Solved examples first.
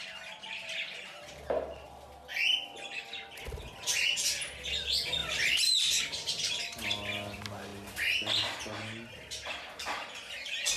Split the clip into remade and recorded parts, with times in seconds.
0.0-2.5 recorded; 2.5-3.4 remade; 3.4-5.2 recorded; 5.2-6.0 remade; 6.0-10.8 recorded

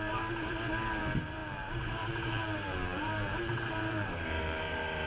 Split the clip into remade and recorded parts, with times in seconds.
0.0-5.1 remade

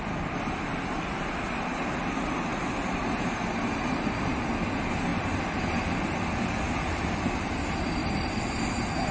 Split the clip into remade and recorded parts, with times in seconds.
0.0-5.1 recorded; 5.1-6.9 remade; 6.9-8.0 recorded; 8.0-8.5 remade; 8.5-9.1 recorded

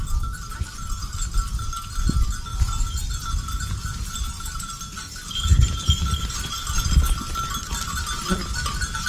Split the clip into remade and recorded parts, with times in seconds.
0.0-9.1 recorded

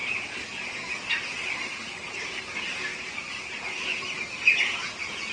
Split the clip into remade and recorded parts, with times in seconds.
0.0-5.3 recorded

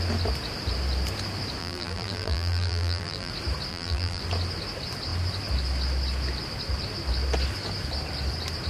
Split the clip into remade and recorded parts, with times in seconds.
0.0-1.6 recorded; 1.6-3.3 remade; 3.3-3.7 recorded; 3.7-4.2 remade; 4.2-8.7 recorded

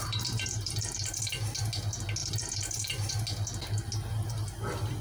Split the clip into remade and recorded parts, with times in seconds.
0.0-1.2 remade; 1.2-2.2 recorded; 2.2-3.1 remade; 3.1-5.0 recorded